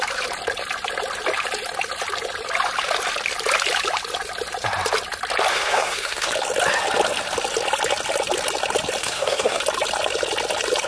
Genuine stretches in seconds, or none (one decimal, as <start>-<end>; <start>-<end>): 0.0-5.5; 6.3-9.0; 9.6-10.9